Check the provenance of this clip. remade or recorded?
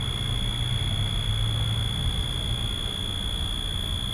recorded